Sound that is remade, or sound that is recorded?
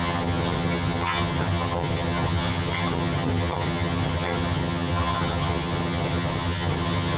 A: remade